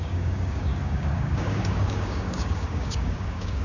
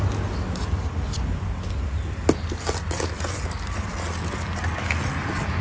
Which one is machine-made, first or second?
first